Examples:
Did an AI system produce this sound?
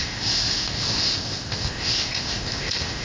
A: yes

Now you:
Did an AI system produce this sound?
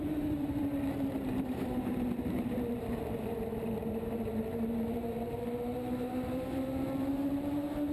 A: yes